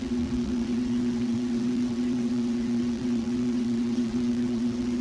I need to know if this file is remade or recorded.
remade